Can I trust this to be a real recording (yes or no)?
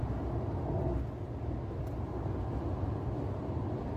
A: yes